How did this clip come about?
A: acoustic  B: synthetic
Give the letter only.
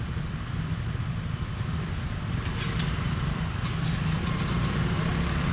A